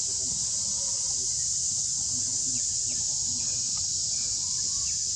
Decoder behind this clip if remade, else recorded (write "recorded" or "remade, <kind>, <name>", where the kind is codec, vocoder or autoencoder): recorded